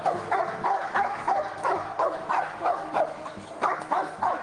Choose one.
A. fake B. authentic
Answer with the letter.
A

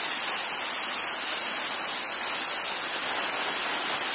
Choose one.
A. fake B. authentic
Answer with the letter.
B